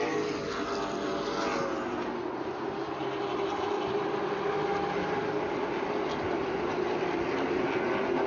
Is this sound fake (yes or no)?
no